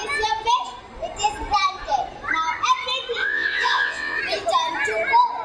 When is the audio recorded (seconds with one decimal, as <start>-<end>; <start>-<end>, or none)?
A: 0.0-3.2; 4.2-5.4